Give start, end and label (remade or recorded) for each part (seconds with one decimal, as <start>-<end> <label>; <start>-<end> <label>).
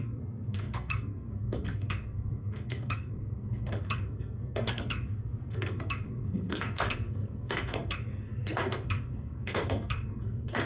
0.0-10.7 remade